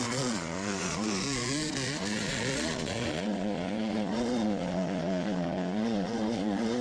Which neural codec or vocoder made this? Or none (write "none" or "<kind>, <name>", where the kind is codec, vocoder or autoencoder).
vocoder, Vocos